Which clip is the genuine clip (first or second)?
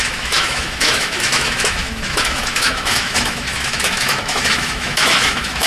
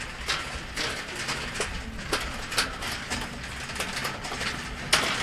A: second